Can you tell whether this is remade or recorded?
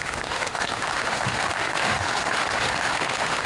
remade